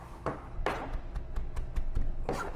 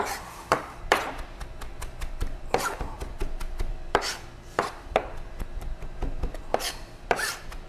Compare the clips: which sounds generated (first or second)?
second